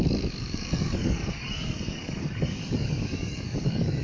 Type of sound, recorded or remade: remade